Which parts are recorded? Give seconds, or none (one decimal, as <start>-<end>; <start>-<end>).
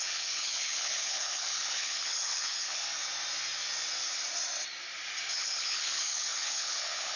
2.8-5.3